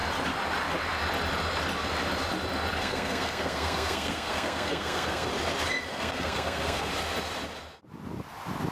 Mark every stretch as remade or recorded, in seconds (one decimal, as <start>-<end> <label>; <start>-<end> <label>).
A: 0.0-2.8 recorded; 2.8-5.3 remade; 5.3-5.9 recorded; 5.9-6.9 remade; 6.9-8.7 recorded